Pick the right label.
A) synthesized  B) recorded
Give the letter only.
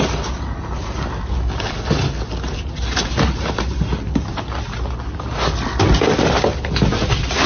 B